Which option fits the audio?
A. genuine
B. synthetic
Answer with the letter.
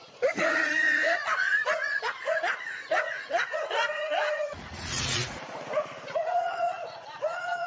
B